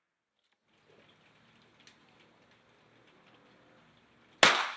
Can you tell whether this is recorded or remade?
recorded